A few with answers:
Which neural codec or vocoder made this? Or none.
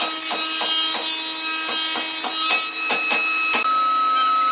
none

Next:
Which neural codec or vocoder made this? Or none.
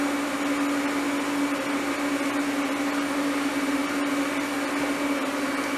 none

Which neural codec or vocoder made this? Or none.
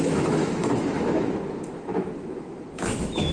autoencoder, DAC-VAE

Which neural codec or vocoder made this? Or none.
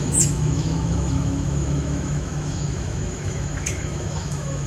autoencoder, DAC-VAE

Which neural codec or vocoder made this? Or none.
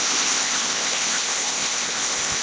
codec, ZipCodec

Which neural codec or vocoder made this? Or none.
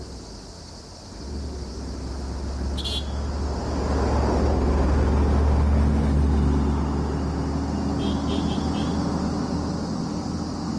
none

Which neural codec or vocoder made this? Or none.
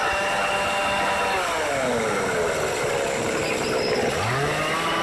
none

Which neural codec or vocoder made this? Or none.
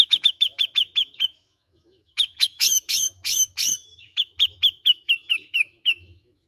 autoencoder, DAC-VAE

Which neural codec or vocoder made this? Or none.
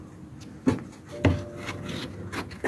none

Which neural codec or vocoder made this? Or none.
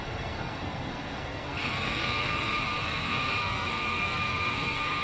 codec, SNAC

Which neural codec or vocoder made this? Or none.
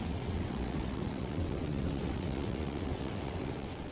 vocoder, WaveNeXt